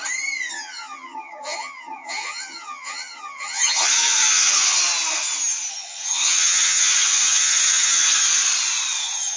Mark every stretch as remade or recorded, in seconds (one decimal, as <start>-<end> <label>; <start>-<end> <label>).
0.0-0.5 recorded; 0.5-4.8 remade; 4.8-5.7 recorded; 5.7-8.2 remade; 8.2-9.0 recorded; 9.0-9.4 remade

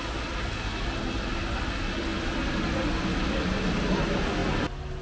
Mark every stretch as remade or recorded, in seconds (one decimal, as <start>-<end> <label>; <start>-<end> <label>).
0.0-5.0 recorded